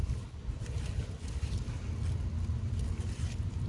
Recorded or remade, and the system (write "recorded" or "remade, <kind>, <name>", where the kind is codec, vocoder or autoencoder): recorded